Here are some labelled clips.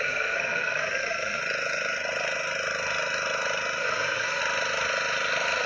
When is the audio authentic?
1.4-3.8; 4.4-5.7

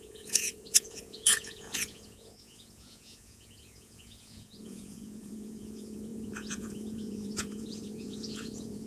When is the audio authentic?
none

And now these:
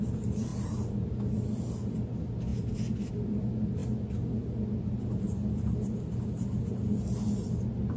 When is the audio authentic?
0.0-8.0

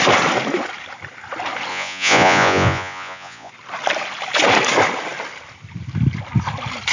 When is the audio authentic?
0.0-1.7; 3.5-6.9